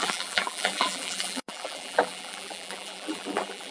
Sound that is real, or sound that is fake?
fake